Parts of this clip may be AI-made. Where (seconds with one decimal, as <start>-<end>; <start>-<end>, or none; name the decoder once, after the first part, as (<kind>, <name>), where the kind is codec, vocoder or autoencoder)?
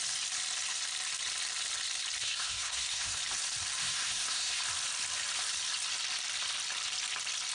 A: 2.2-3.2 (codec, SNAC); 3.8-4.6